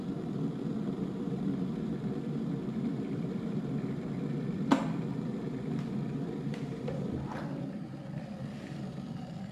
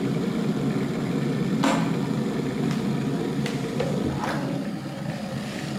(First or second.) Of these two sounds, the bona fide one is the second